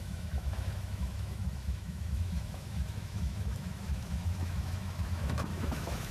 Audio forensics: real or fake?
fake